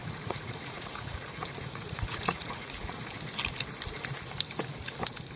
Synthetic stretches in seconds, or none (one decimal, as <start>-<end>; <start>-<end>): 0.0-3.1